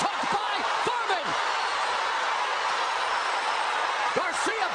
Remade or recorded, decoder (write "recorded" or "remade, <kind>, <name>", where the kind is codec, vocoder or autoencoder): recorded